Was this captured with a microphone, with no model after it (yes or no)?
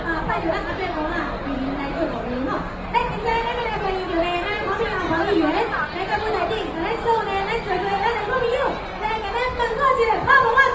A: yes